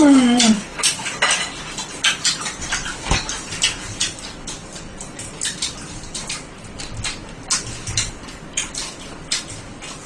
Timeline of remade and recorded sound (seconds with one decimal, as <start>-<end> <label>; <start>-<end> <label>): 0.0-4.6 recorded; 4.6-6.8 remade; 6.8-10.1 recorded